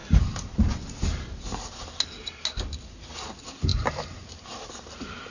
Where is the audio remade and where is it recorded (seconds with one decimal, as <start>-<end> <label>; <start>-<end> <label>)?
0.0-5.3 recorded